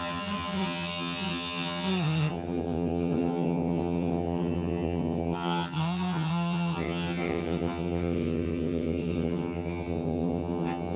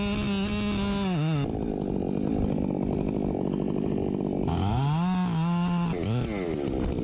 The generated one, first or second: first